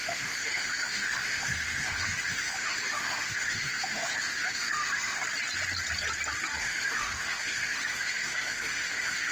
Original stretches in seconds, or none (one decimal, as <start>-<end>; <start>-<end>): 5.2-6.6